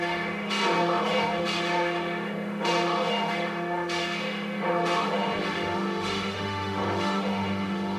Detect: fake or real fake